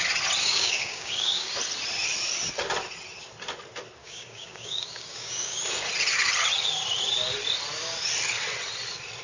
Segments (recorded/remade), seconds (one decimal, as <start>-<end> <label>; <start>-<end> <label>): 0.0-0.4 recorded; 0.4-1.5 remade; 1.5-4.0 recorded; 4.0-5.6 remade; 5.6-9.2 recorded